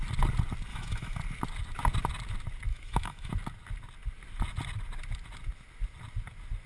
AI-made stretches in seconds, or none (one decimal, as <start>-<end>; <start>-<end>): 0.7-1.2; 2.7-3.3